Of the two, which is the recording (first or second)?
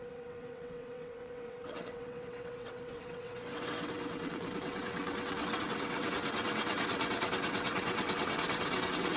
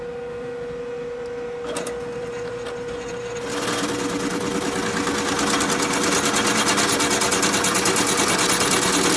second